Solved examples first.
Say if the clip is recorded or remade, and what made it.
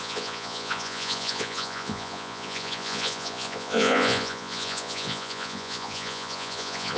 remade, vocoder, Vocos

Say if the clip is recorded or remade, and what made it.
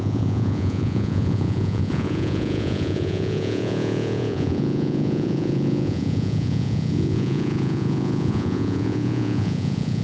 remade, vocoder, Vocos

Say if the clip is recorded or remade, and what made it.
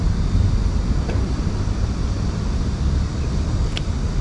recorded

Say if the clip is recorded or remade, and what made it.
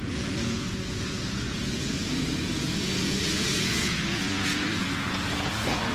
remade, vocoder, Vocos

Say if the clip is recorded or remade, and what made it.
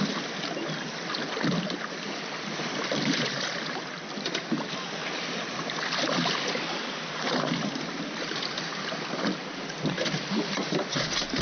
recorded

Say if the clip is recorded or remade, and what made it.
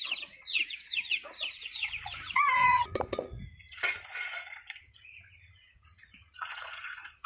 remade, vocoder, Vocos